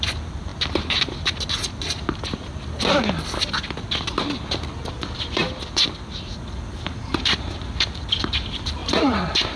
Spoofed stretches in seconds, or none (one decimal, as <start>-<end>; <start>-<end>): 0.0-0.5; 4.9-5.4; 6.3-9.6